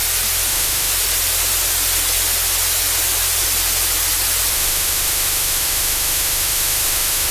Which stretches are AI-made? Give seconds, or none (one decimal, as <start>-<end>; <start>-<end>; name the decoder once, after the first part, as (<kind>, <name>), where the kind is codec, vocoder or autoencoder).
0.5-0.9 (autoencoder, DAC-VAE); 4.5-7.3